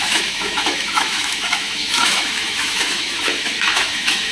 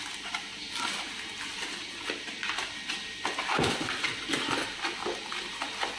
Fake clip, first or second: first